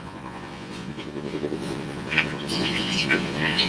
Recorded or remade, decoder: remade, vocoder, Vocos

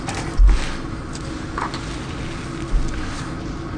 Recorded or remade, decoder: recorded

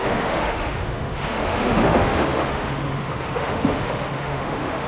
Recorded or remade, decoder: remade, autoencoder, DAC-VAE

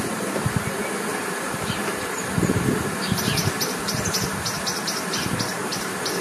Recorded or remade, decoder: remade, vocoder, BigVGAN v2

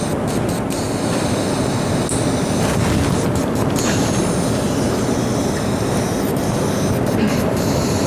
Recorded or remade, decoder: recorded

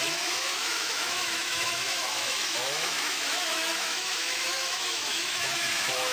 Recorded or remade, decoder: remade, autoencoder, DAC-VAE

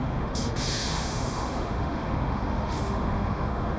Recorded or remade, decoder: remade, autoencoder, DAC-VAE